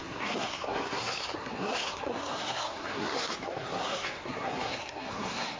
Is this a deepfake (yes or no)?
yes